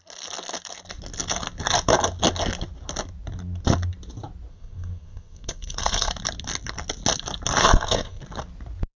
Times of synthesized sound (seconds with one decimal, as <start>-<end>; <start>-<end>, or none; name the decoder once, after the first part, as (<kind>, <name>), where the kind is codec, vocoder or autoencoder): 4.5-6.1 (codec, SNAC); 7.6-8.2